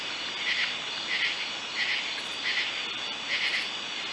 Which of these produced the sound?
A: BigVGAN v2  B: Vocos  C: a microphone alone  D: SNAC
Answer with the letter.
C